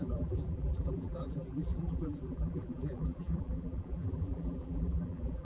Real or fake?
fake